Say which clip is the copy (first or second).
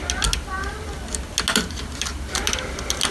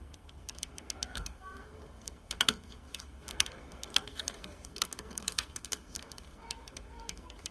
second